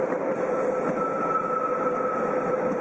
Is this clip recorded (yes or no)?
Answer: yes